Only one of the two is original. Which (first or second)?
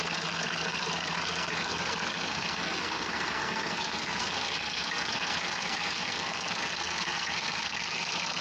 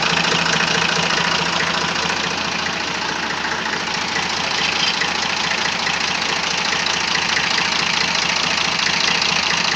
second